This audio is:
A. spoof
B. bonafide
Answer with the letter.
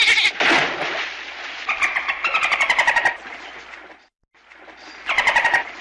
B